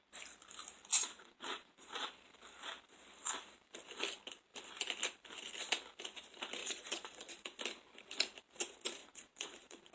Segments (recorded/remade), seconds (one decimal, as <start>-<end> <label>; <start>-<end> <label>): 0.0-0.9 recorded; 0.9-2.1 remade; 2.1-6.6 recorded; 6.6-7.6 remade; 7.6-9.0 recorded; 9.0-9.9 remade